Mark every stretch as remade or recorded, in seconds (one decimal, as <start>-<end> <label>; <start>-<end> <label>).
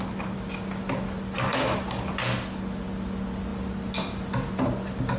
0.0-1.5 recorded; 1.5-2.1 remade; 2.1-5.2 recorded